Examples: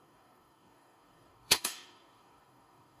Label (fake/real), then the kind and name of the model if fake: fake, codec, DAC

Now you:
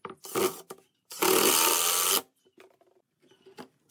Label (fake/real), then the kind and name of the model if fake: real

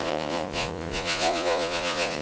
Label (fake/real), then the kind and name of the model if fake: fake, vocoder, Vocos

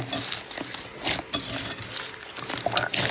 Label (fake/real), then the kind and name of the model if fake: real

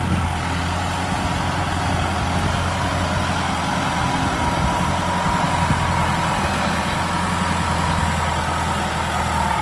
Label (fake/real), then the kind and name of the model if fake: real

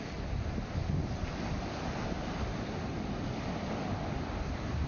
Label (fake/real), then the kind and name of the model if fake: real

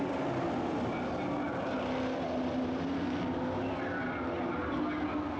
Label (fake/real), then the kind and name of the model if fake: real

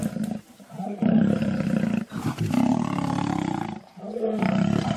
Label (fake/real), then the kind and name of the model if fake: fake, vocoder, BigVGAN v2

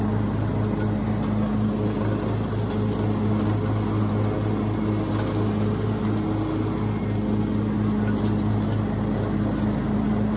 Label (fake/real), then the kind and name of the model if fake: real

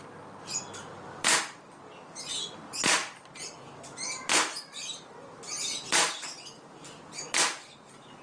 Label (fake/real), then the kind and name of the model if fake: real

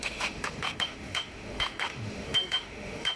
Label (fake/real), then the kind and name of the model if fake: fake, autoencoder, DAC-VAE